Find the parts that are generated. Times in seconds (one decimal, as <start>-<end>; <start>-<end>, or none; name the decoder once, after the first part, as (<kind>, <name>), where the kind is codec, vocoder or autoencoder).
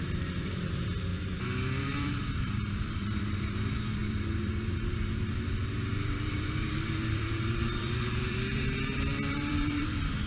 0.0-1.1 (vocoder, BigVGAN v2); 1.8-10.3